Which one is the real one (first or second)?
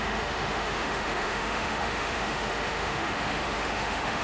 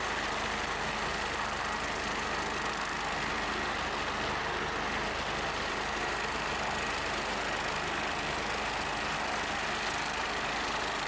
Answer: second